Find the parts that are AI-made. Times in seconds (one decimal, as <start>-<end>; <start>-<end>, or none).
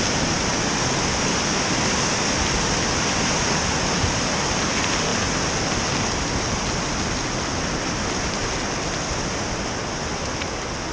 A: none